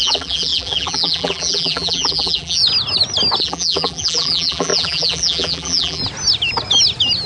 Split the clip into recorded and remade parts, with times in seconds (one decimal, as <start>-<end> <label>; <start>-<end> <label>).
0.0-2.6 remade; 2.6-3.4 recorded; 3.4-6.0 remade; 6.0-7.3 recorded